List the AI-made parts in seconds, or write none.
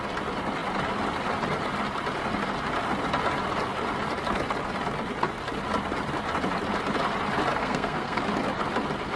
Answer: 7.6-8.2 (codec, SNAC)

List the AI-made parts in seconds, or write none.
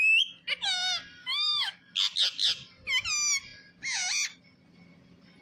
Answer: 1.2-1.9 (codec, DAC)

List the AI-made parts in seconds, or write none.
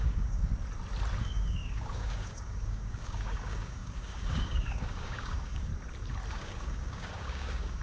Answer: 0.0-0.5 (codec, DAC); 1.2-5.7; 6.3-7.8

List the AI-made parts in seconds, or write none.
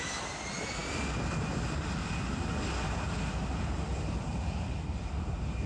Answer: none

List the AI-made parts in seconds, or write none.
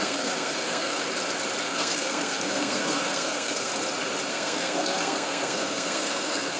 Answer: 0.0-1.0 (codec, SNAC); 1.6-3.7; 4.3-6.6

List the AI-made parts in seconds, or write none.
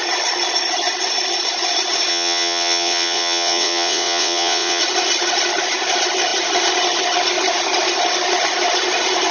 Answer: 2.1-4.8 (vocoder, WaveNeXt)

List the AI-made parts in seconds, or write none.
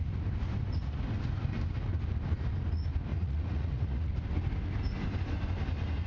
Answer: 3.1-4.1 (vocoder, Vocos)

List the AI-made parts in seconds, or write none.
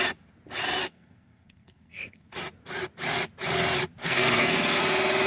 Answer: 0.8-2.3 (codec, SNAC); 4.0-4.8